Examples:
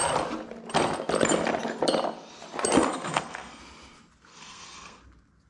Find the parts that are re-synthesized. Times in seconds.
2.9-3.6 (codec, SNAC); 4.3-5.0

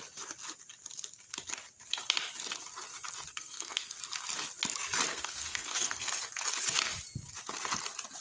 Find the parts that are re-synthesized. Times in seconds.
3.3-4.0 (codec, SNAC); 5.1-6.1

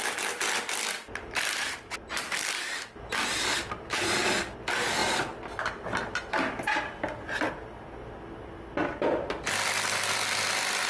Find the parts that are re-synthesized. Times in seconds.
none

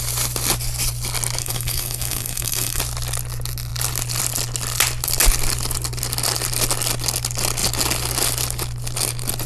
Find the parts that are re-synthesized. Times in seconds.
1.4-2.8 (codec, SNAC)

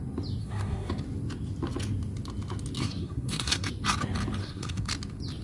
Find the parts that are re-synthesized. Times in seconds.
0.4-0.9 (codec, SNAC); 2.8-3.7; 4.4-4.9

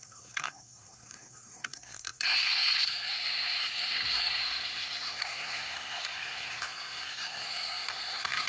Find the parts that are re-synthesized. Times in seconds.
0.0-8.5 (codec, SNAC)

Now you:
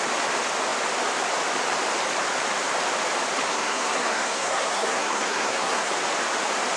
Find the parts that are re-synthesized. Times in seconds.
3.5-5.9 (codec, SNAC)

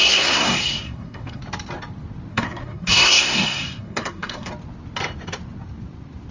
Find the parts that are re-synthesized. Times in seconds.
0.0-1.4 (codec, SNAC); 2.3-4.5